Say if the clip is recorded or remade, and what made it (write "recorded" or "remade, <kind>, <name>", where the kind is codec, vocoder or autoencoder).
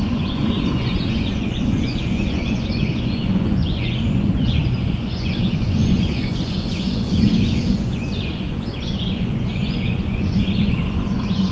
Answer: remade, vocoder, Vocos